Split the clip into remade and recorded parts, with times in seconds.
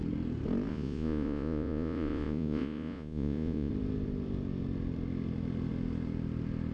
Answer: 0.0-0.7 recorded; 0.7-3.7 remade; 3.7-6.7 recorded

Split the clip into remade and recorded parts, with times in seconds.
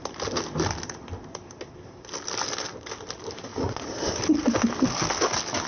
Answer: 0.0-3.5 recorded; 3.5-4.1 remade; 4.1-5.7 recorded